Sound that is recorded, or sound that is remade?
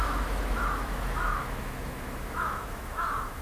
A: remade